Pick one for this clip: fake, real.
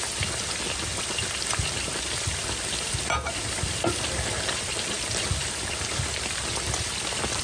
real